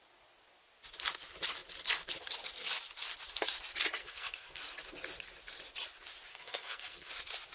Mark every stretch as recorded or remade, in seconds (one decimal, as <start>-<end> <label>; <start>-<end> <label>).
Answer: 0.0-4.0 recorded; 4.0-4.6 remade; 4.6-6.3 recorded; 6.3-7.1 remade; 7.1-7.5 recorded